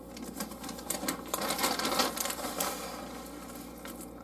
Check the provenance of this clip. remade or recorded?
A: recorded